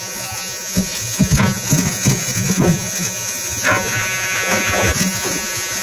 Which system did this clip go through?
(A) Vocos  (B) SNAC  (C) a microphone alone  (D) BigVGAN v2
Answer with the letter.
A